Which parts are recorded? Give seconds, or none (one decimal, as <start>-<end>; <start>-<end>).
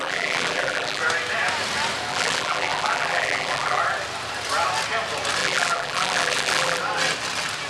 1.0-2.1; 3.8-5.4; 6.8-7.7